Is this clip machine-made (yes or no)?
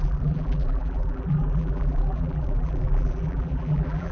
yes